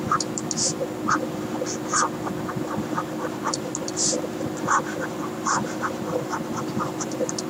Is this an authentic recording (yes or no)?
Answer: yes